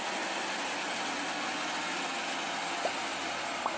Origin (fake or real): real